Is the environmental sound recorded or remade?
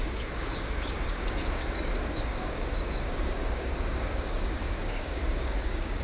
remade